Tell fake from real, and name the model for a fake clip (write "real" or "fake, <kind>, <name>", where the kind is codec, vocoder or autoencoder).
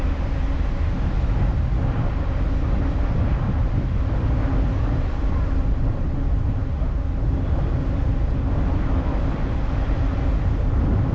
real